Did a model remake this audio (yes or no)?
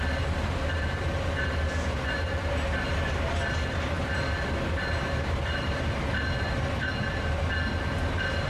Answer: no